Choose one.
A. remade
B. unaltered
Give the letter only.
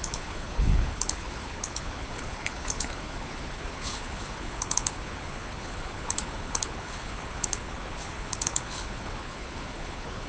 A